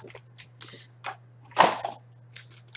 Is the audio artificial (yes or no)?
no